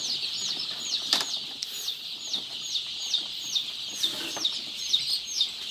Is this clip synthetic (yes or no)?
no